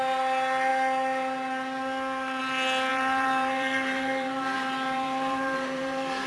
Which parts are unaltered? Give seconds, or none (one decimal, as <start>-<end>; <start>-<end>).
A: 0.0-2.9